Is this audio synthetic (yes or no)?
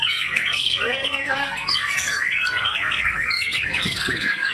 yes